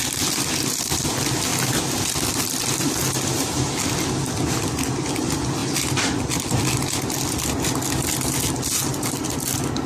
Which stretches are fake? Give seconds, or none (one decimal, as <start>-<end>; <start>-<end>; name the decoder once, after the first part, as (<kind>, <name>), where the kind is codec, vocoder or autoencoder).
5.6-6.6 (vocoder, BigVGAN v2); 8.9-9.4